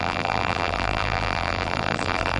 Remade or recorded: remade